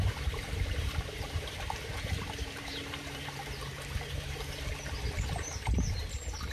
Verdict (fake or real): fake